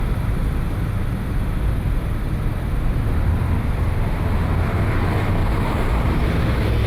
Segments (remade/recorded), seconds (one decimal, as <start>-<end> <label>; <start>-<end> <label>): 0.0-5.4 recorded; 5.4-6.9 remade